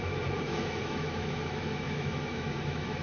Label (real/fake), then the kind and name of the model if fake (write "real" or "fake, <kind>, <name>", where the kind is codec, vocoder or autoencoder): fake, autoencoder, DAC-VAE